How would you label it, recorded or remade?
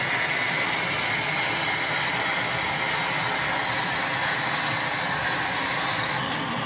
recorded